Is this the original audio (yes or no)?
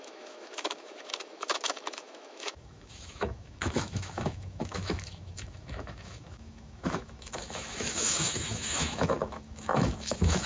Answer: no